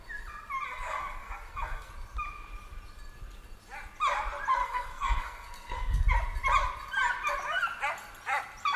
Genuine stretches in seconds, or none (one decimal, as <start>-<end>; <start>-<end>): 0.0-0.7; 1.9-4.6; 6.1-8.8